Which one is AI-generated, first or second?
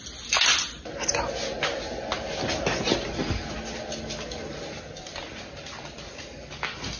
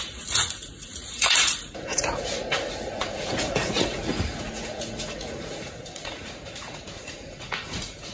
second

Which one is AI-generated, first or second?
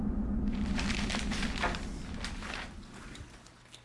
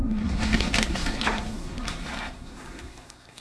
second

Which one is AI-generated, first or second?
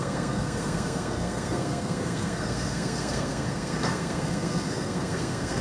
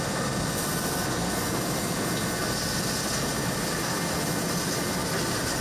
first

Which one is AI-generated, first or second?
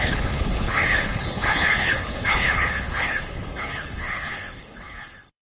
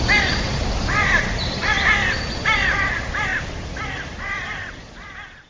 first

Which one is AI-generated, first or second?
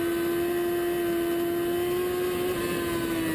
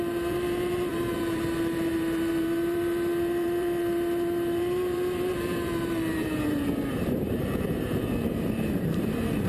second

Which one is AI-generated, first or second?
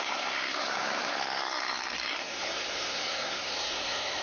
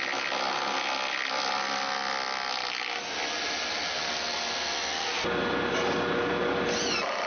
first